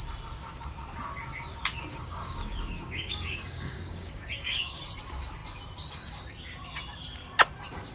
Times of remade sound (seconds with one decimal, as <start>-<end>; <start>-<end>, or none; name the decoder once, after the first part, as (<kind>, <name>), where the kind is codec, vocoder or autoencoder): 1.9-4.8 (codec, DAC)